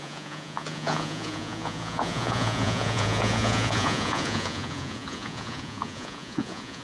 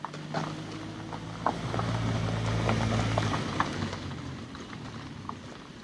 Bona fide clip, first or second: second